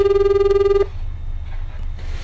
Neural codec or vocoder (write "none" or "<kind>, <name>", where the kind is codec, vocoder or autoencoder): none